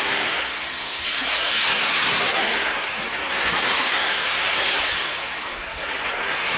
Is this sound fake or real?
fake